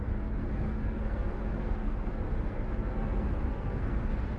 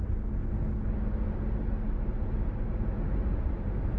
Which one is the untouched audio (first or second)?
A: second